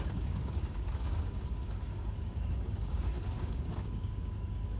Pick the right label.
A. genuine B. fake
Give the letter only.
B